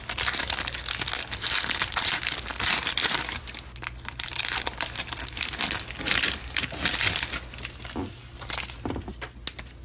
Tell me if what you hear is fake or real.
real